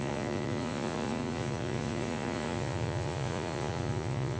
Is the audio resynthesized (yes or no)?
yes